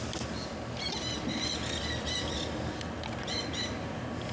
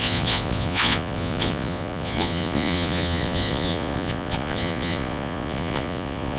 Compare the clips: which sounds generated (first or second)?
second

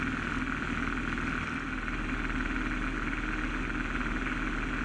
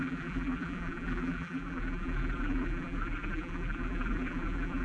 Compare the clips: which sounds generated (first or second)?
second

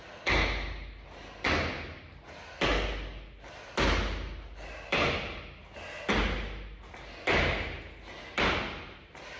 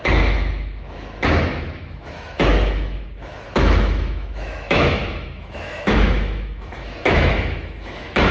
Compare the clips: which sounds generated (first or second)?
second